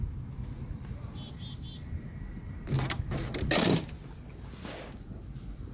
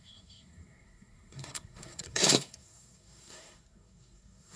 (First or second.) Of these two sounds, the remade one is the second